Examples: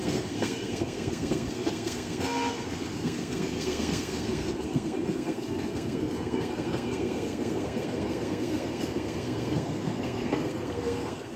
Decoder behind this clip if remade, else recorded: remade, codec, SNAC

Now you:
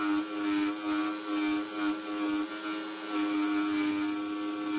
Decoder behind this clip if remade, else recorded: recorded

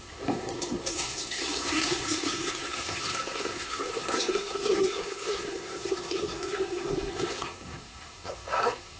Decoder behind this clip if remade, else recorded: remade, codec, SNAC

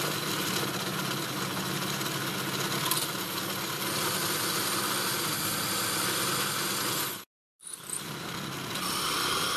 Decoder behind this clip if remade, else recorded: recorded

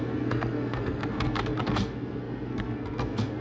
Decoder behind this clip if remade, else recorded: remade, codec, SNAC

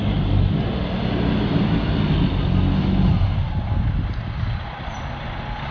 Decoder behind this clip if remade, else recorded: recorded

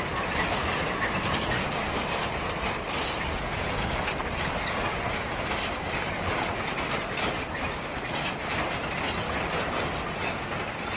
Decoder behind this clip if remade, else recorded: recorded